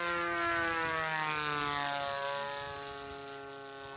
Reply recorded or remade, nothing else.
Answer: recorded